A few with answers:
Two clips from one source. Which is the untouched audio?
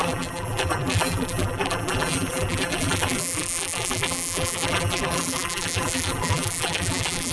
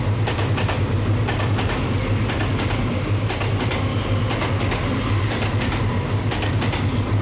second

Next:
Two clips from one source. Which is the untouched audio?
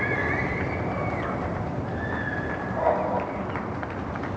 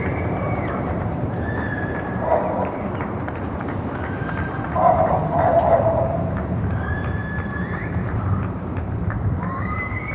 first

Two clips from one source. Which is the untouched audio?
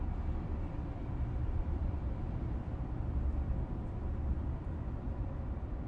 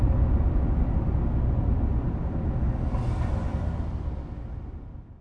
second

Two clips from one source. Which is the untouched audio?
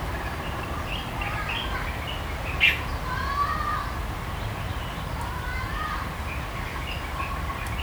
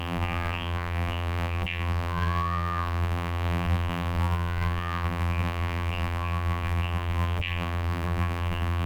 first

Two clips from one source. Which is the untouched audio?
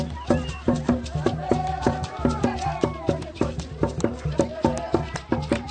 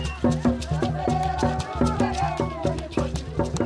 second